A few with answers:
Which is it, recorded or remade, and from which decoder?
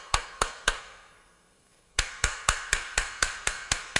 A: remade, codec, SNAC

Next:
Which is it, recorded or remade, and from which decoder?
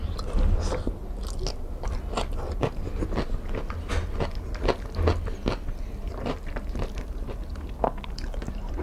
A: recorded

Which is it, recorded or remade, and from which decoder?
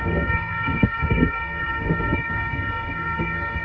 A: remade, codec, SNAC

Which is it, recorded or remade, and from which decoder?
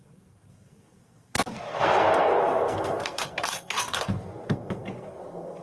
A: remade, codec, SNAC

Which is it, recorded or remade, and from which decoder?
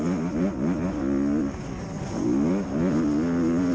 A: recorded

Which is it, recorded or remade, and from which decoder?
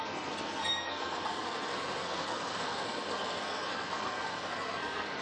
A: remade, codec, SNAC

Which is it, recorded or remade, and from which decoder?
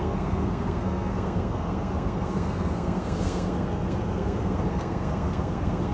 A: remade, codec, SNAC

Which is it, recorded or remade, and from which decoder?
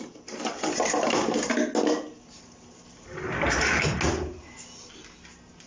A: recorded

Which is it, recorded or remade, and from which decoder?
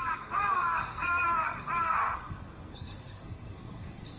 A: remade, codec, SNAC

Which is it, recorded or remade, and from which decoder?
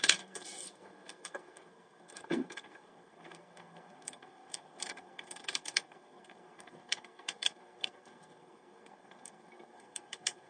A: remade, codec, SNAC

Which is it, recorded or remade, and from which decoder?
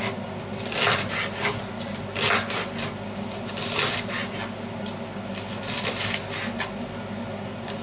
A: recorded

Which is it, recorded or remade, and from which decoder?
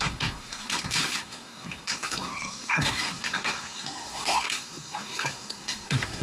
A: remade, codec, SNAC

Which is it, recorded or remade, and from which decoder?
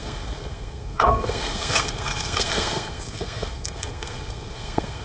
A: remade, codec, SNAC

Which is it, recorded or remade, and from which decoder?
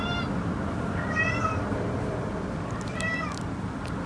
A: recorded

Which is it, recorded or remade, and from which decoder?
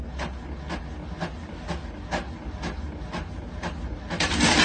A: recorded